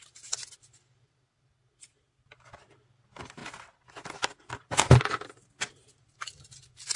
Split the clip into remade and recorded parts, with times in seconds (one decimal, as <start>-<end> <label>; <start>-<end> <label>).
0.0-7.0 recorded